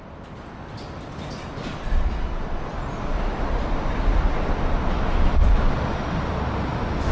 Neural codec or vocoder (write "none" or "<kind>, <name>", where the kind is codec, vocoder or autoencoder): none